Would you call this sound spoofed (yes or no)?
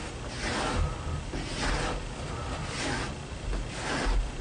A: no